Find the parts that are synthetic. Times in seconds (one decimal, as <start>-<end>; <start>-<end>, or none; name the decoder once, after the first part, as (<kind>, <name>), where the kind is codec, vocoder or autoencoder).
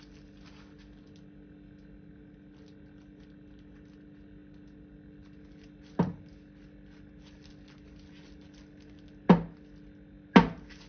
none